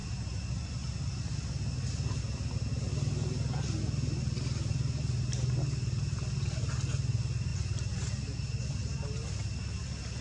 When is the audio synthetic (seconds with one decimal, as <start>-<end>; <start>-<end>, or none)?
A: none